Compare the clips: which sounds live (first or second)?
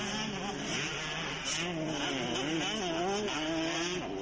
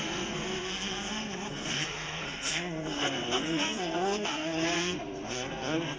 first